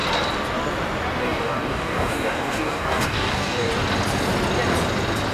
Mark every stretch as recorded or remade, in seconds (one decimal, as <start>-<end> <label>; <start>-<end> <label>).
0.0-1.2 recorded; 1.2-3.7 remade; 3.7-5.3 recorded